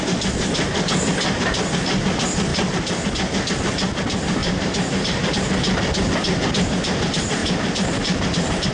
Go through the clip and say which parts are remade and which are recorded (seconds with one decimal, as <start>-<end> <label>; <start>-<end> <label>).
0.0-2.5 recorded; 2.5-3.1 remade; 3.1-4.4 recorded; 4.4-5.3 remade; 5.3-7.4 recorded; 7.4-8.7 remade